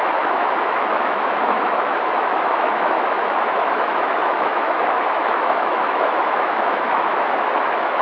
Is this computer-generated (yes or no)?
yes